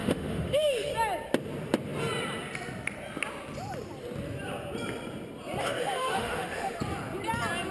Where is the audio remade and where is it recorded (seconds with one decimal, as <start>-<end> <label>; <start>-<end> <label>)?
0.0-0.9 remade; 0.9-5.6 recorded; 5.6-6.8 remade; 6.8-7.7 recorded